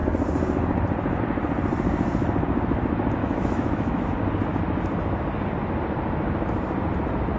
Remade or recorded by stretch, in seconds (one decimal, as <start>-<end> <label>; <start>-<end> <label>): 0.0-3.2 recorded; 3.2-4.1 remade; 4.1-7.4 recorded

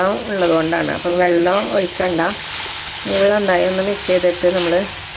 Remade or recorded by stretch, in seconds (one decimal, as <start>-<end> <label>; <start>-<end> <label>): 0.0-1.1 recorded; 1.1-3.3 remade; 3.3-5.2 recorded

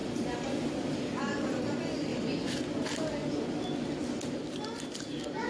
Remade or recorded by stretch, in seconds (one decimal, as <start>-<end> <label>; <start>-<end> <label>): 0.0-1.2 remade; 1.2-2.1 recorded; 2.1-2.6 remade; 2.6-5.5 recorded

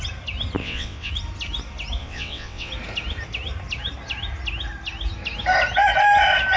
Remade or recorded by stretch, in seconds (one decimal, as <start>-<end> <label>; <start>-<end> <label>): 0.0-0.6 recorded; 0.6-1.1 remade; 1.1-2.0 recorded; 2.0-2.7 remade; 2.7-6.6 recorded